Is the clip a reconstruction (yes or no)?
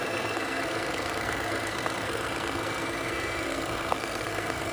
yes